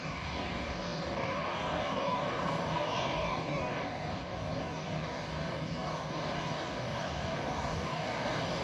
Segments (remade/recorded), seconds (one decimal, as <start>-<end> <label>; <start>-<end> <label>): 0.0-8.6 remade